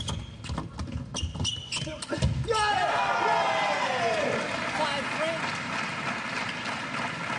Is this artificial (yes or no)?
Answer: no